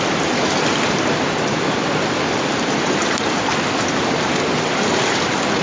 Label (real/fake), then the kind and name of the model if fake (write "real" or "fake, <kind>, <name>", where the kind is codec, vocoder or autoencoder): real